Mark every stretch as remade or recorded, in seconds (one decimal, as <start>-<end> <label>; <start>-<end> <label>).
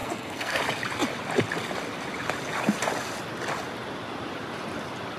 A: 0.0-0.6 remade; 0.6-5.2 recorded